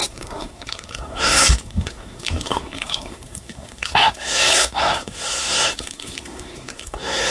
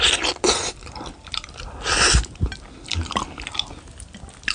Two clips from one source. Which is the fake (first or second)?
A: first